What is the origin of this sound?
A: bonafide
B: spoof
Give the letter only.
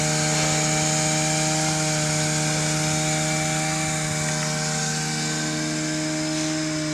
A